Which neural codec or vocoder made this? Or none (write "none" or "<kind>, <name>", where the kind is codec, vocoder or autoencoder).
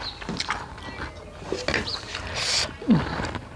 none